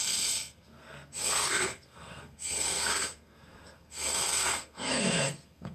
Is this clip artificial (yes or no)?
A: yes